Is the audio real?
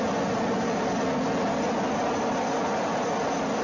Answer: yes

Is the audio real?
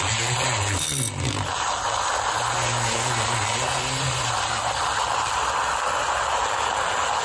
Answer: yes